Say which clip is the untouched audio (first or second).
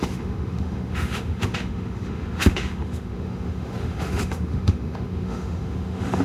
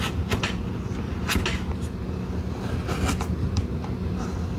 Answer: second